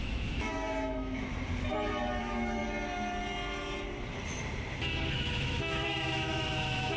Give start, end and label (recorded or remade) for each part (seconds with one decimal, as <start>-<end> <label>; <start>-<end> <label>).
0.0-1.3 remade; 1.3-2.2 recorded; 2.2-2.6 remade; 2.6-5.1 recorded; 5.1-7.0 remade